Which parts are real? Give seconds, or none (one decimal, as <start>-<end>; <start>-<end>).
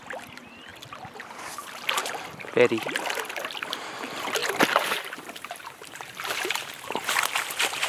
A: 0.0-4.4; 7.1-7.9